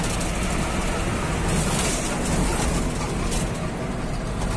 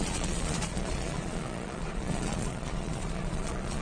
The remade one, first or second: second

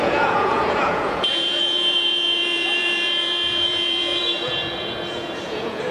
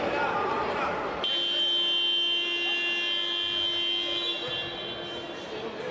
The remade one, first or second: first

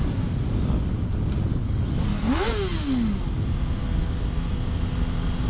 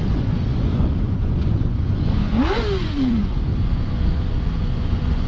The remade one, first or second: second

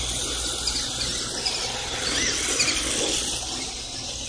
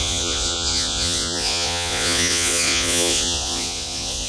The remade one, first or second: second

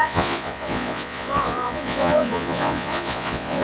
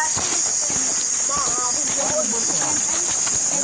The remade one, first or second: first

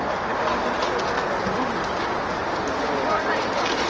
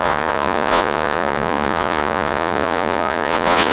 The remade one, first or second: second